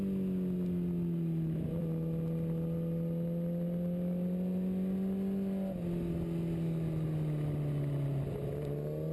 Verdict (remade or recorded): recorded